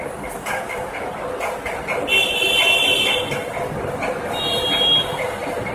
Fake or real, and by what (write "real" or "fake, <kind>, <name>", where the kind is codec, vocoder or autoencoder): real